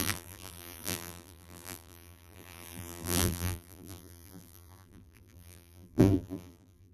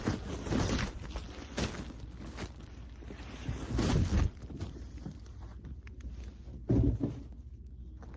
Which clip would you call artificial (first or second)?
first